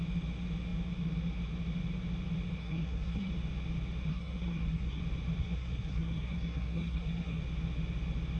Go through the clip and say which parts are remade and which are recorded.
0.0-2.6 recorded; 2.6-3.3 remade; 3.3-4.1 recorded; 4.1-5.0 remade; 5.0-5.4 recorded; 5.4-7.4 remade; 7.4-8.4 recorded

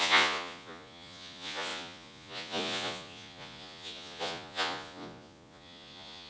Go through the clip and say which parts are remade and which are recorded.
0.0-6.3 remade